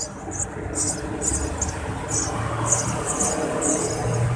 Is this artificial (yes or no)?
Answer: no